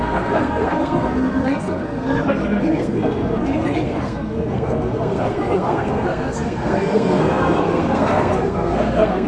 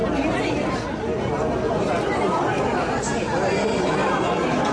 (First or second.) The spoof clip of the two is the first